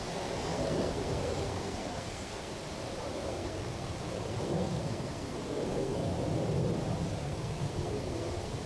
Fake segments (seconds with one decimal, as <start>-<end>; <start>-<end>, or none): 0.0-2.5; 3.1-6.1; 7.2-8.7